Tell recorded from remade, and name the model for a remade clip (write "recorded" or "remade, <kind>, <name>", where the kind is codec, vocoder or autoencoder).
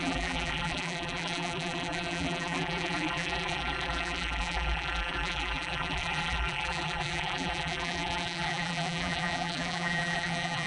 remade, vocoder, BigVGAN v2